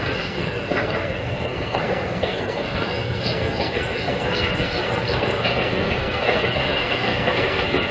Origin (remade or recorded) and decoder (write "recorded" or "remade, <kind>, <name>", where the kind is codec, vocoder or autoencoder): remade, codec, SNAC